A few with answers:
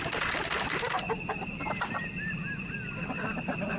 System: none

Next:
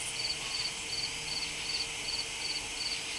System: none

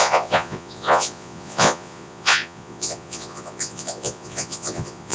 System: vocoder, Vocos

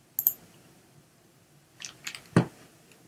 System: none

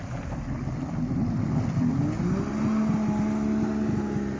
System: none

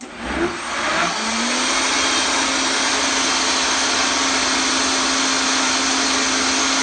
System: none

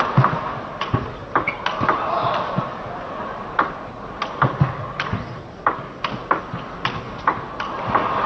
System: none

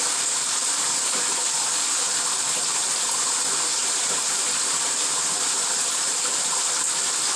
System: none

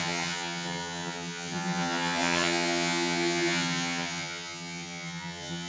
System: vocoder, HiFi-GAN